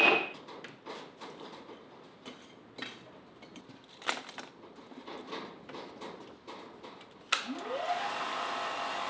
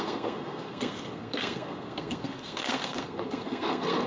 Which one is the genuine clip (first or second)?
first